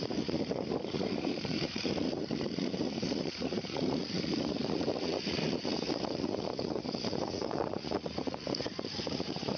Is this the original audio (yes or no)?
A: no